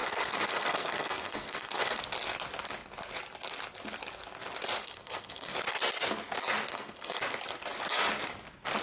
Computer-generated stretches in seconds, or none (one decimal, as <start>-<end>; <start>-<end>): 0.0-2.0; 4.8-5.5; 6.7-7.2